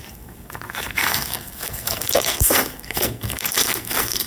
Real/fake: fake